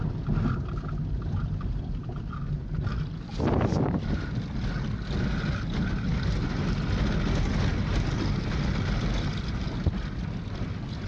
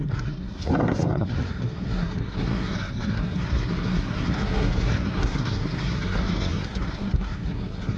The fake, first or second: second